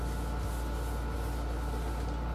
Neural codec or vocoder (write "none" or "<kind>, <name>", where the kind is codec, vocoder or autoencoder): none